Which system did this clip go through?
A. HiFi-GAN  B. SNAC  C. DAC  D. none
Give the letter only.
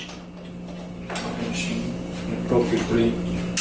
D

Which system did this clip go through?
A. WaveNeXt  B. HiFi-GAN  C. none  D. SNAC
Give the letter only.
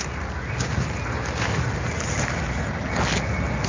C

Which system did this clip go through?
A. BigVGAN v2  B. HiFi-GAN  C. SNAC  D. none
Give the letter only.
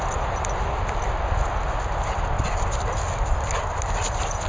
D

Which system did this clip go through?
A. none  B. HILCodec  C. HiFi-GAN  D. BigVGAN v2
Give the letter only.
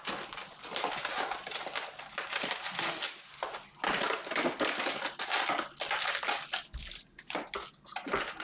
A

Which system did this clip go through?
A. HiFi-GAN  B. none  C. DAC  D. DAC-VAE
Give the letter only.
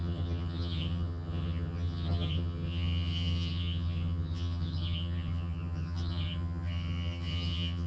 A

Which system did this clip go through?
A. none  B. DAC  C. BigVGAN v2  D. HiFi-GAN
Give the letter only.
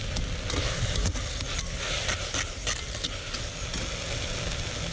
A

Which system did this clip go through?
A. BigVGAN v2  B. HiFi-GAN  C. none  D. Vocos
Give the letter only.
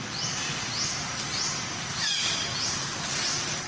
C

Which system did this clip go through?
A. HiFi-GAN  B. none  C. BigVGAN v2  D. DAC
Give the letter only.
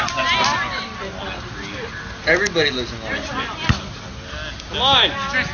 B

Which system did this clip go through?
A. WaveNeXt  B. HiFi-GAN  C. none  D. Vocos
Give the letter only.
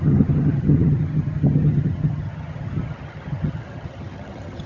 B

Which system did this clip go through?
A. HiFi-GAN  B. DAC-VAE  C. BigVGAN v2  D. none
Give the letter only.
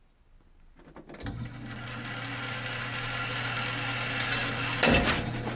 D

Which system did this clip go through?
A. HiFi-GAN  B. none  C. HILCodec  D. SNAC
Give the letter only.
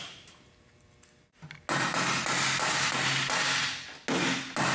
B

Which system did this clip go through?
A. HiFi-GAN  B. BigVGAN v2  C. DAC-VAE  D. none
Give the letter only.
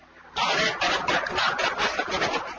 D